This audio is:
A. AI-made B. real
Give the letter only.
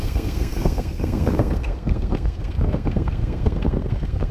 A